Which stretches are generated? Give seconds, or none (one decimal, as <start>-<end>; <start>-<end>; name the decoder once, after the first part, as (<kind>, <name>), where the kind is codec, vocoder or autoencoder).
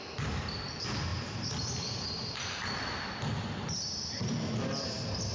none